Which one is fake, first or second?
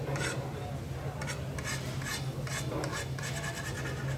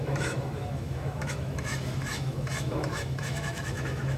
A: second